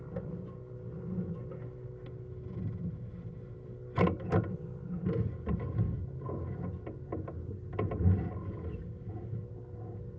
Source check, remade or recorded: recorded